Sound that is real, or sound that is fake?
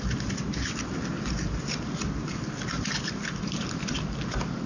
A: real